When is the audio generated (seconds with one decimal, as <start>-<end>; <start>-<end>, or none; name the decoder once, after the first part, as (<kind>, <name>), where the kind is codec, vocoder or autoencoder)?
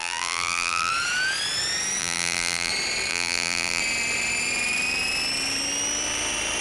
0.0-0.9 (vocoder, BigVGAN v2); 2.0-2.7; 3.1-3.8